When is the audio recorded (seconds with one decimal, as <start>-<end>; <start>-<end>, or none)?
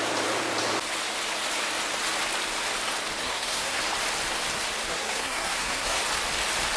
0.0-3.2; 3.8-4.9; 6.0-6.8